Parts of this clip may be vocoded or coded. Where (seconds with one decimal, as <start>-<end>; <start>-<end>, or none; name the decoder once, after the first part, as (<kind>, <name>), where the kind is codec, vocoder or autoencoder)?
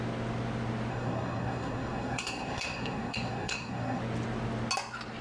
0.9-4.0 (codec, SNAC)